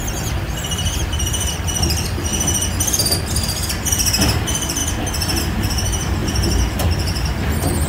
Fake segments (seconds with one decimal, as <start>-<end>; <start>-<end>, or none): 0.0-2.3; 3.9-4.8; 5.4-7.9